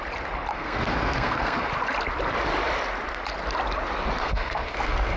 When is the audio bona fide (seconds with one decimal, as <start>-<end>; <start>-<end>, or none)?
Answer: 0.0-0.5; 1.7-4.2